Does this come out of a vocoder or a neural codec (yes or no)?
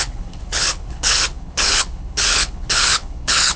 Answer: yes